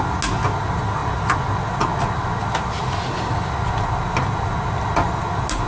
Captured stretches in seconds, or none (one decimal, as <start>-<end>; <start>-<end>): 0.0-5.7